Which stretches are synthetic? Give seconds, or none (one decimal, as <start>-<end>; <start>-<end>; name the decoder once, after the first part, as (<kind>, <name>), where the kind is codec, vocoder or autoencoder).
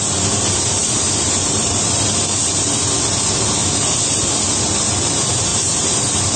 0.8-1.8 (vocoder, BigVGAN v2); 5.5-6.4